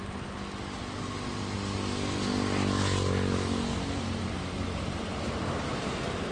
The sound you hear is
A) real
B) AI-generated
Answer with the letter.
A